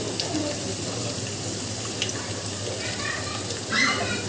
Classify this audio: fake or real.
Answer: real